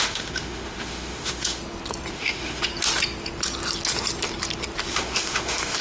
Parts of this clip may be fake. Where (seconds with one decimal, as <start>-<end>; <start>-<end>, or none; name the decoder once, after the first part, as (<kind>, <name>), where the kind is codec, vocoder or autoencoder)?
0.0-1.6 (autoencoder, DAC-VAE); 2.1-2.7; 4.9-5.8